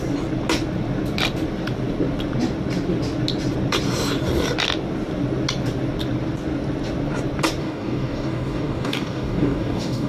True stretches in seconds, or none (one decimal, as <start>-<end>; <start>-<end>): 0.0-7.6